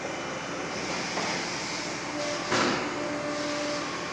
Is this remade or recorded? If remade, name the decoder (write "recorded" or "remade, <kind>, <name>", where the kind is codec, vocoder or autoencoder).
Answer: recorded